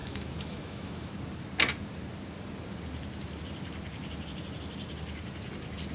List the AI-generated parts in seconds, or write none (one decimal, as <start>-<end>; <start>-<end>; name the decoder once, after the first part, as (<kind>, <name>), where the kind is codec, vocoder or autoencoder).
0.0-1.1 (autoencoder, DAC-VAE)